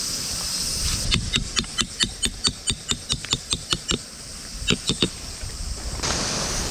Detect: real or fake fake